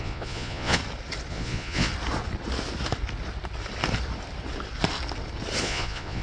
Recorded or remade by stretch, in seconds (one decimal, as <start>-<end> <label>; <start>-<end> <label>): 0.0-0.8 remade; 0.8-1.3 recorded; 1.3-1.9 remade; 1.9-5.6 recorded; 5.6-6.2 remade

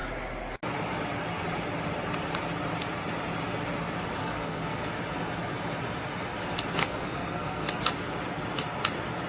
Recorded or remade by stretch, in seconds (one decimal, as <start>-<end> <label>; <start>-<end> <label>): 0.0-4.2 recorded; 4.2-4.9 remade; 4.9-6.8 recorded; 6.8-7.8 remade; 7.8-9.3 recorded

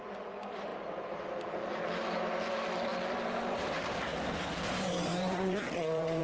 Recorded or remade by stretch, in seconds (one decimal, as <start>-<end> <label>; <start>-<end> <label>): 0.0-0.7 recorded; 0.7-1.8 remade; 1.8-2.9 recorded; 2.9-3.7 remade; 3.7-5.1 recorded; 5.1-6.2 remade

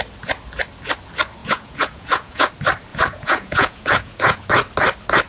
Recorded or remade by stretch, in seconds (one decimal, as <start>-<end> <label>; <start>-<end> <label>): 0.0-1.4 recorded; 1.4-2.5 remade; 2.5-2.9 recorded; 2.9-4.5 remade; 4.5-5.3 recorded

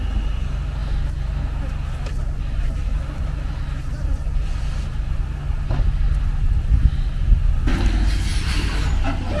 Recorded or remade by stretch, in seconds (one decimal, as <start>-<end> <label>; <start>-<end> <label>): 0.0-8.3 recorded; 8.3-9.4 remade